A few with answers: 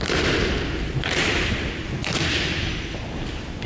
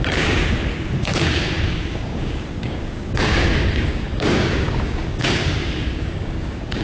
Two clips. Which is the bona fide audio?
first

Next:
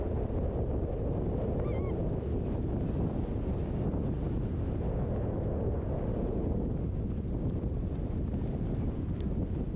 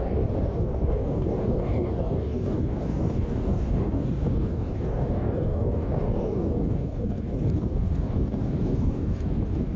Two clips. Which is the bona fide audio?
first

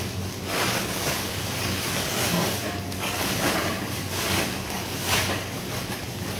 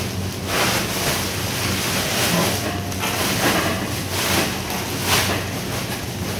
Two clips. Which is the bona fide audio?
second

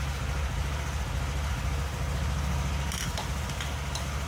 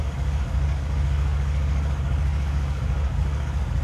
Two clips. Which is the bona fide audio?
first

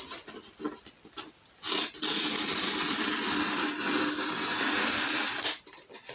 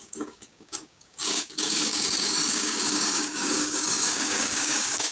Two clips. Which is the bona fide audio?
first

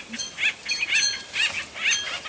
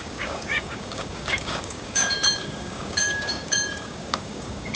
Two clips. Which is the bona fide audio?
first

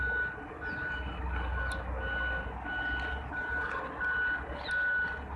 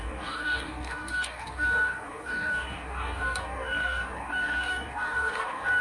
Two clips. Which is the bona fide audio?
first